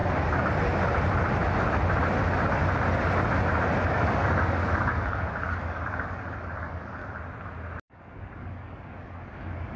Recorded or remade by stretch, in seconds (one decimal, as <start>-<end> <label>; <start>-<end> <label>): 0.0-3.9 recorded; 3.9-7.0 remade; 7.0-7.8 recorded; 7.8-9.8 remade